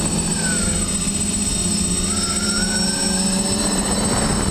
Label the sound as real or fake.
real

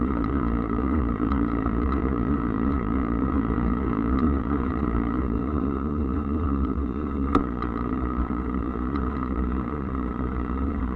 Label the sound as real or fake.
fake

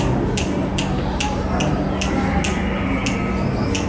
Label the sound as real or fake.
real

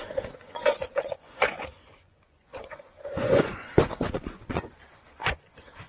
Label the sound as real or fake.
fake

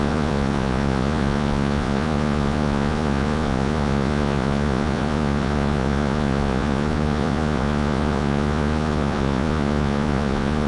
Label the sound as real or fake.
fake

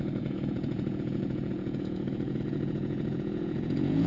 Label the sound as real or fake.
fake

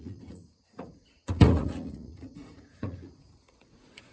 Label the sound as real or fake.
fake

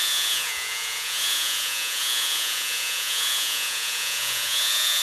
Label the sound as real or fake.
fake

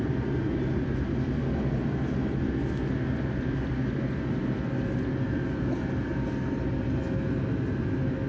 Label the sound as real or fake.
real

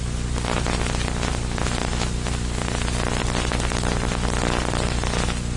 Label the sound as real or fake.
real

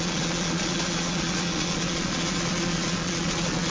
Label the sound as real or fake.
fake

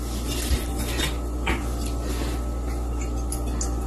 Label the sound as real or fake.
real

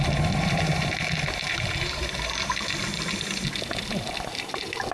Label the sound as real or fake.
real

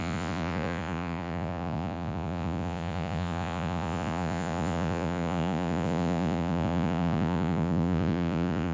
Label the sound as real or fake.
fake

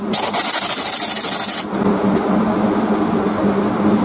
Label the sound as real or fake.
real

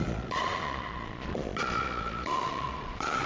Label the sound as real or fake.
fake